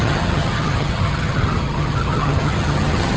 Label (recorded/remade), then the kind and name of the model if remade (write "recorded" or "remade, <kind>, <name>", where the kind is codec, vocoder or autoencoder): remade, vocoder, HiFi-GAN